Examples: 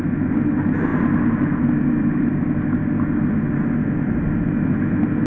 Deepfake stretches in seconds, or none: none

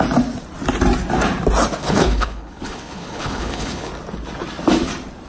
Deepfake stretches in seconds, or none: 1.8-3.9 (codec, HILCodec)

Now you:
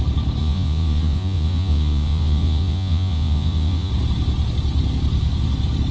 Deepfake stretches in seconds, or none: 0.4-3.9 (vocoder, Vocos)

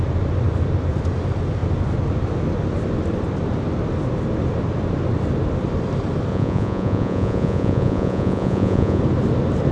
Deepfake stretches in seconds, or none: 6.3-9.0 (vocoder, Vocos)

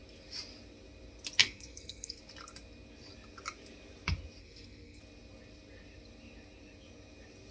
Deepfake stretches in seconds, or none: 1.4-2.2 (codec, SNAC); 4.4-5.0